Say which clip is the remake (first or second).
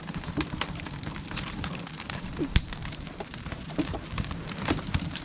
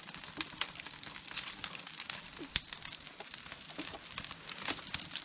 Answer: first